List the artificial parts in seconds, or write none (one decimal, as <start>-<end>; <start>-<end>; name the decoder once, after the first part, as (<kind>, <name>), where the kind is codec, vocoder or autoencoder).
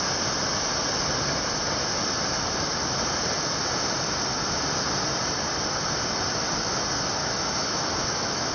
7.2-8.5 (autoencoder, DAC-VAE)